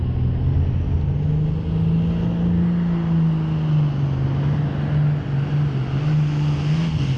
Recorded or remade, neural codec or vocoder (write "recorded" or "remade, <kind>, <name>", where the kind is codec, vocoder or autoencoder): recorded